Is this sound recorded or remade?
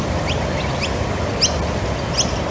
recorded